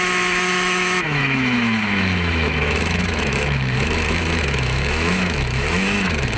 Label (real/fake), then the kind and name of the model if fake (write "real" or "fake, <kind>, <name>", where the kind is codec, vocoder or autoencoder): fake, autoencoder, DAC-VAE